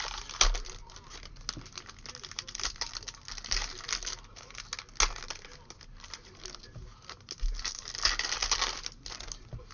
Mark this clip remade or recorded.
recorded